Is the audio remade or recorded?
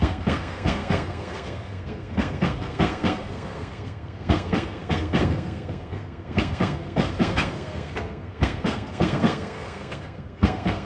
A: remade